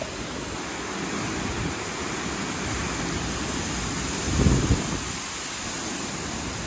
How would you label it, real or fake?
real